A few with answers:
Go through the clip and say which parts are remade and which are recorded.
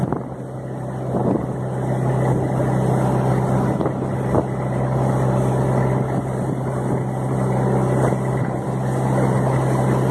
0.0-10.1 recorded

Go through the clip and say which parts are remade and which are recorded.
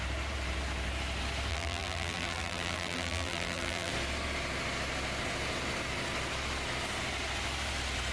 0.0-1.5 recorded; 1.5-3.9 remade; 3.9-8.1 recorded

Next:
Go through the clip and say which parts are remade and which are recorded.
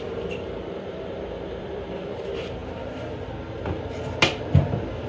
0.0-2.6 remade; 2.6-5.1 recorded